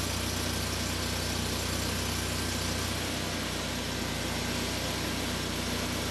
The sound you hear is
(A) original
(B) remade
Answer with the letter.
A